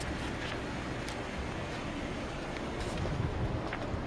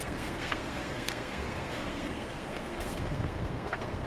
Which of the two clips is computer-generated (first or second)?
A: second